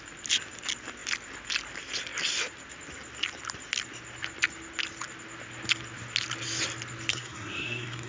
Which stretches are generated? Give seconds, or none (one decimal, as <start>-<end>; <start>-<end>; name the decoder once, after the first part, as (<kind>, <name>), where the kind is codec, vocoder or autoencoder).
7.1-8.1 (codec, SNAC)